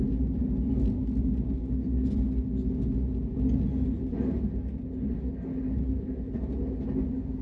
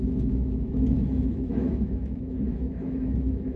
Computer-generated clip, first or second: second